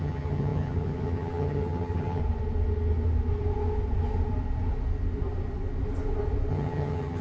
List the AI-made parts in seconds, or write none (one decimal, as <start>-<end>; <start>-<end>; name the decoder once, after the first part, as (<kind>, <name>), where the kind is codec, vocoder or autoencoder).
0.0-2.2 (vocoder, HiFi-GAN); 6.5-7.2